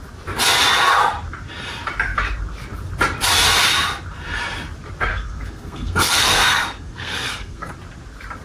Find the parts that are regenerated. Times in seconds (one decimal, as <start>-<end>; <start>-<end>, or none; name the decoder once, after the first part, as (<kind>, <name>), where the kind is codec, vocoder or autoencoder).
5.1-7.7 (codec, SNAC)